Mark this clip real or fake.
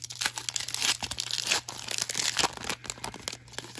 real